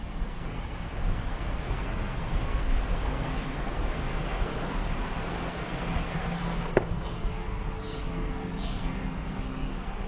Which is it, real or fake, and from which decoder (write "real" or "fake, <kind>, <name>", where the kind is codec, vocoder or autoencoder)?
fake, codec, SNAC